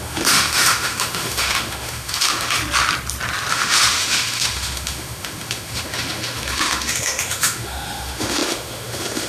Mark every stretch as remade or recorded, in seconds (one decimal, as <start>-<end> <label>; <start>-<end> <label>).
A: 0.0-2.6 remade; 2.6-3.5 recorded; 3.5-9.3 remade

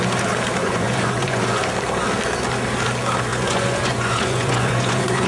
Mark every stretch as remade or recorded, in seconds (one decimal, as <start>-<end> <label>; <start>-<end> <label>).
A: 0.0-0.6 recorded; 0.6-1.7 remade; 1.7-3.3 recorded; 3.3-5.3 remade

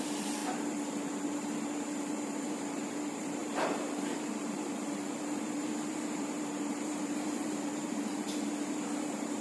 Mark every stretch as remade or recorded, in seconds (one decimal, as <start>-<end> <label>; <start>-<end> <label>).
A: 0.0-9.4 remade

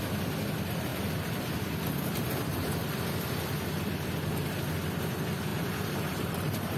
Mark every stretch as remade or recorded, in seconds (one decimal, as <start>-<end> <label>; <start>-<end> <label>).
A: 0.0-5.5 recorded; 5.5-6.8 remade

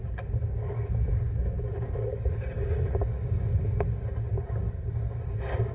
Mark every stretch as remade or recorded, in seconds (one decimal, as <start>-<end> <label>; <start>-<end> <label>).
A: 0.0-5.7 remade

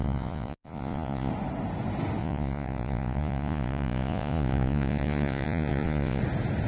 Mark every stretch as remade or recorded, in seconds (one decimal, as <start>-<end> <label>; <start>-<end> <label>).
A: 0.0-1.3 remade; 1.3-2.2 recorded; 2.2-6.2 remade; 6.2-6.7 recorded

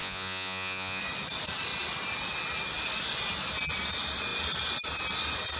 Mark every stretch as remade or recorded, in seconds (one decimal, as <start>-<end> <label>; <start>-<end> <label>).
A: 0.0-1.0 remade; 1.0-5.6 recorded